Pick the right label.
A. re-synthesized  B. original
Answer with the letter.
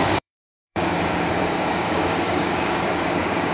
A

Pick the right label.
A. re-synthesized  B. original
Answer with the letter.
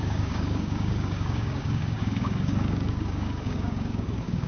A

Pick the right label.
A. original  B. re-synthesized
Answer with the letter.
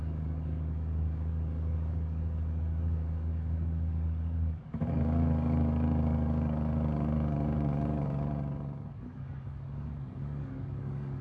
B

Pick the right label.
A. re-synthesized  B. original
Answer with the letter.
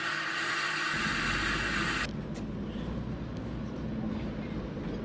B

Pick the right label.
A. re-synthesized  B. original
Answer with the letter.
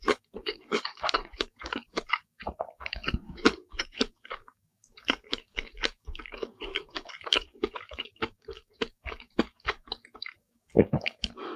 A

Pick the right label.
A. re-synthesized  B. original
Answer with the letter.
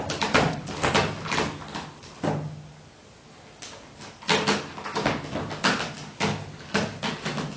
B